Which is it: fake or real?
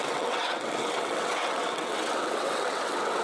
fake